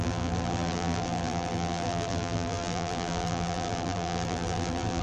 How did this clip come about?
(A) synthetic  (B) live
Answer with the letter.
A